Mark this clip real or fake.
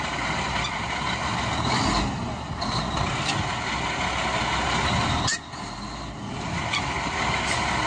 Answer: real